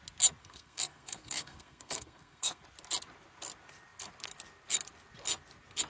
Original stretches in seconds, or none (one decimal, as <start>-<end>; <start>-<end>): 0.0-0.4; 2.6-5.9